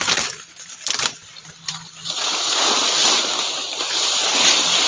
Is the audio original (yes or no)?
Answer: no